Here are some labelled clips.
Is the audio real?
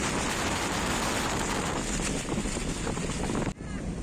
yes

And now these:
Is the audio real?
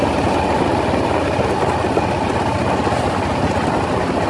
yes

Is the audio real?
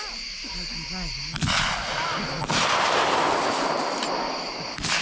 yes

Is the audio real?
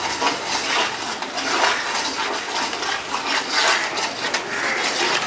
yes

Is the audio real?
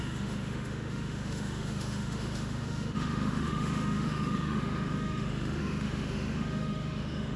no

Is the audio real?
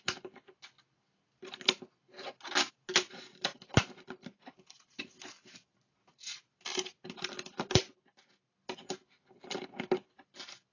yes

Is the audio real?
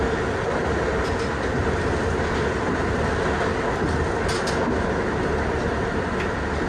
yes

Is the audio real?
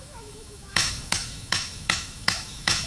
no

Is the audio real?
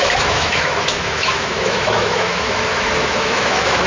no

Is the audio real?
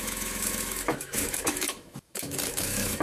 no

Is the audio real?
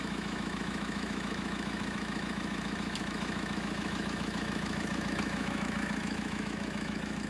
no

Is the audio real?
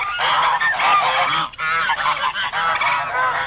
yes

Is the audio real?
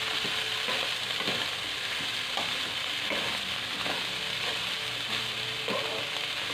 yes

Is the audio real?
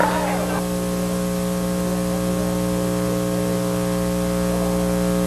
yes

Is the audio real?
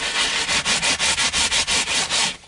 yes